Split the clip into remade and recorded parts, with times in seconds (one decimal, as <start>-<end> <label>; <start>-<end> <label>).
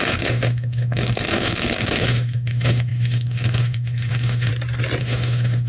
0.0-4.5 remade; 4.5-5.0 recorded; 5.0-5.7 remade